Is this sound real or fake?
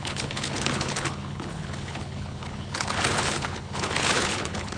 fake